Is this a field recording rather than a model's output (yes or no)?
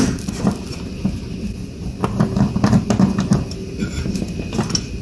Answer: yes